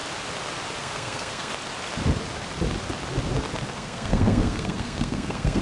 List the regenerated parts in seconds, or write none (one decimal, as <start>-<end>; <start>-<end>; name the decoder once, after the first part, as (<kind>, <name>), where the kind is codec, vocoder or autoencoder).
0.8-1.5 (codec, SNAC); 3.7-5.6